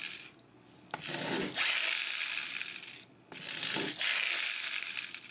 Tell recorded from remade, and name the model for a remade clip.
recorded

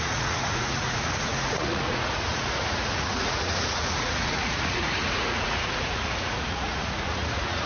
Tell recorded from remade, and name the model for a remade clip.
remade, vocoder, Vocos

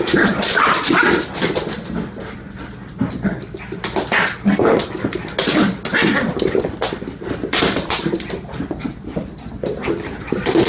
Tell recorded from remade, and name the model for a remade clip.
recorded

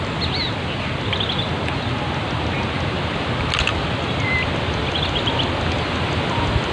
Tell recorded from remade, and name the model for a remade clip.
recorded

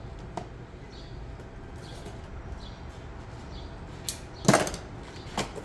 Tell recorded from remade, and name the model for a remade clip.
recorded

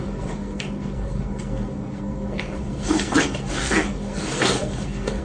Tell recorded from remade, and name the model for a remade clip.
remade, codec, SNAC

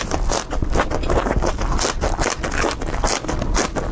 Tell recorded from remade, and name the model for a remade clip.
recorded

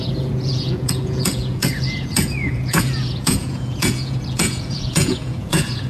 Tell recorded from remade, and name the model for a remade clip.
remade, vocoder, Vocos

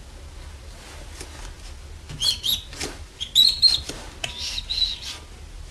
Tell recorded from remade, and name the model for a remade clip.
recorded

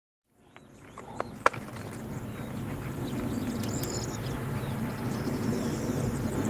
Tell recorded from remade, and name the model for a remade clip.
recorded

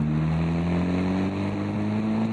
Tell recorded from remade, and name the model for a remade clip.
recorded